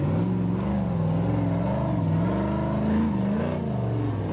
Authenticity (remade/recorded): recorded